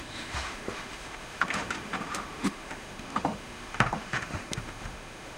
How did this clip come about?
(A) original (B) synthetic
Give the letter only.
B